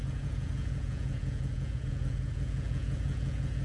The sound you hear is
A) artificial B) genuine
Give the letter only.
A